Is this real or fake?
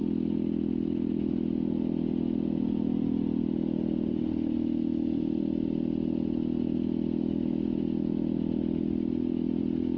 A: real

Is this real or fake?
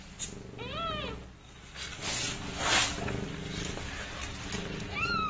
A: real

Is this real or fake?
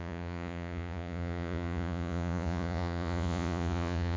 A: fake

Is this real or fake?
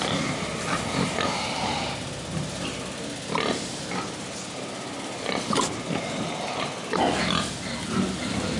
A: real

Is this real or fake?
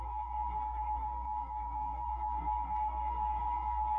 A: fake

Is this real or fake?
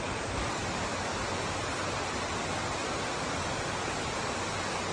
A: real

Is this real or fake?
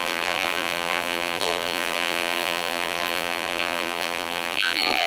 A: fake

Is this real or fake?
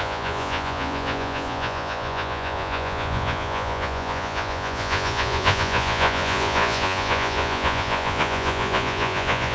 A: fake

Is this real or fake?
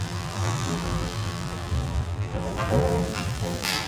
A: fake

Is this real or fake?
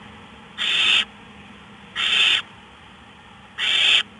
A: real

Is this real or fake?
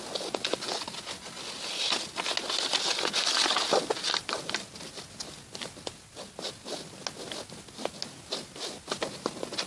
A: real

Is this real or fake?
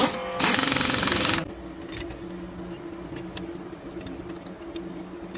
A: real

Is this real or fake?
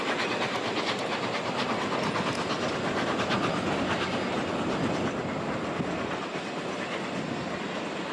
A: real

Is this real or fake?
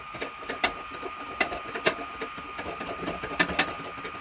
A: real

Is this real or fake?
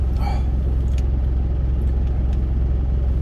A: real